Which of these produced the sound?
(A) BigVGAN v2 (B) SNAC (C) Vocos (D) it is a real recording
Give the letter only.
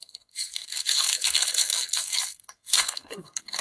B